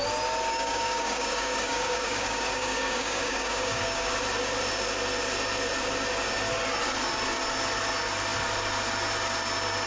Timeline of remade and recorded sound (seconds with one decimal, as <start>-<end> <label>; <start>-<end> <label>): 0.0-0.5 recorded; 0.5-4.1 remade; 4.1-9.9 recorded